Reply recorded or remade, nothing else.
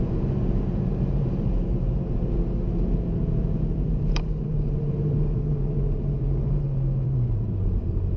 remade